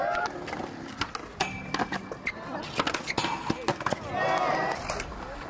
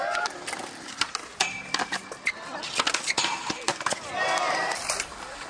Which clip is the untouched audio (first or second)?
first